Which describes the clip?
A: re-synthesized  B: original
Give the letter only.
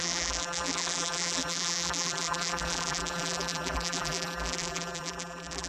A